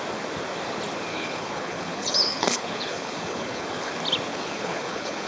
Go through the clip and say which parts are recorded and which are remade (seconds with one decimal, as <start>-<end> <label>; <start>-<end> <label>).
0.0-1.1 recorded; 1.1-3.9 remade; 3.9-4.3 recorded; 4.3-5.3 remade